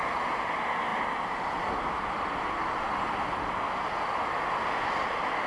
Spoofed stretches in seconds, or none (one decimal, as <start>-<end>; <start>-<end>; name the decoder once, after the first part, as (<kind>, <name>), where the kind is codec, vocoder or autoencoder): none